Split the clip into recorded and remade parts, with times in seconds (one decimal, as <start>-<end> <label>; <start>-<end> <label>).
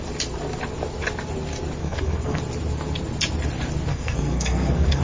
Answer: 0.0-1.8 recorded; 1.8-2.4 remade; 2.4-3.9 recorded; 3.9-5.0 remade